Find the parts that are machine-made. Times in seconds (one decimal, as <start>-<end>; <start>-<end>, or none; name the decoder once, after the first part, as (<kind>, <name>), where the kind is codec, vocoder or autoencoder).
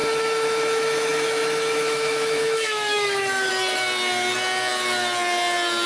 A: 0.0-3.5 (autoencoder, DAC-VAE)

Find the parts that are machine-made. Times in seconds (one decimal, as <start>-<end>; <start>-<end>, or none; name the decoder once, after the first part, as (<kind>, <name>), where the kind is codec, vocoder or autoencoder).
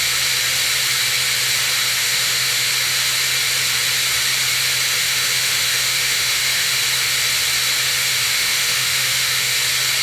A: 1.9-2.7 (autoencoder, DAC-VAE); 5.0-6.8; 8.0-9.6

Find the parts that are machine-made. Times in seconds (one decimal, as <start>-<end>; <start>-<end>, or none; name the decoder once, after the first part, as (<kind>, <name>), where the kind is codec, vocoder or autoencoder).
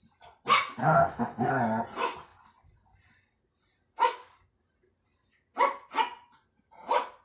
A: 0.8-1.5 (autoencoder, DAC-VAE)